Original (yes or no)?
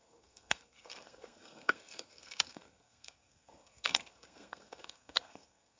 no